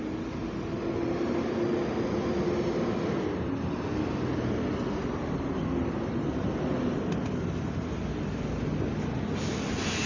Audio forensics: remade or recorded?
recorded